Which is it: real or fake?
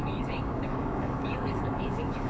fake